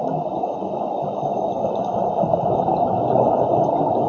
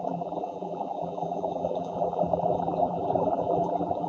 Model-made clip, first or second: second